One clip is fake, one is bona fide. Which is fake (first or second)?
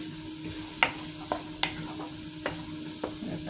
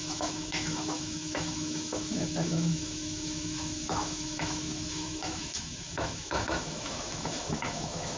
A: second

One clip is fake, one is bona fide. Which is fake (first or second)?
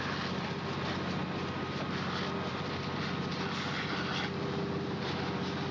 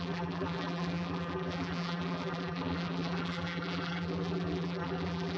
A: second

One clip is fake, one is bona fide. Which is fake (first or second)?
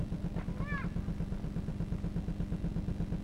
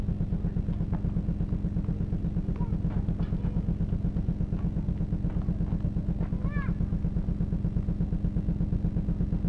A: first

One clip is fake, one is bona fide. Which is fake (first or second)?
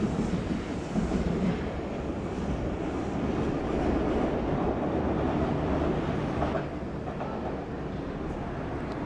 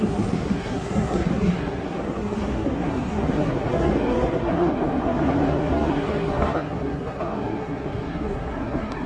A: second